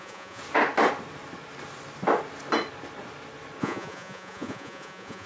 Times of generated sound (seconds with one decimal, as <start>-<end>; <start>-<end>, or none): 0.0-0.4; 3.6-5.3